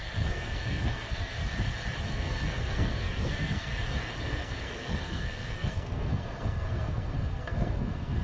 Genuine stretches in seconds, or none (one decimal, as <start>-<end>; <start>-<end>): 1.4-2.1; 3.7-4.2

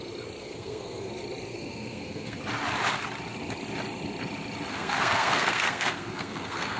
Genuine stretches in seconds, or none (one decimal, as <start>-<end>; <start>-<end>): 0.0-0.4; 1.1-1.5; 2.4-4.7